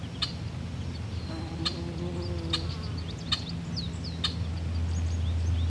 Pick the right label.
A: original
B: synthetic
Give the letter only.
A